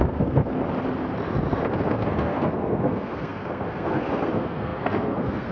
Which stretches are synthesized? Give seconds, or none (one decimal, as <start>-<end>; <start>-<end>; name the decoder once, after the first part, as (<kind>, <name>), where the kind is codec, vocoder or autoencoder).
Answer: 0.0-0.5 (codec, SNAC); 1.9-5.5